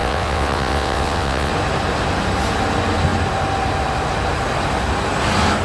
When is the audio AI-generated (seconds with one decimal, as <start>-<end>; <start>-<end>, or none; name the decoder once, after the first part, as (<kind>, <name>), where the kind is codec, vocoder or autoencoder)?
0.0-1.5 (vocoder, WaveNeXt)